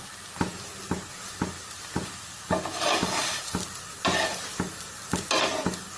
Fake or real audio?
real